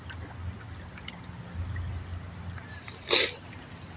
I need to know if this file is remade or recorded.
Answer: recorded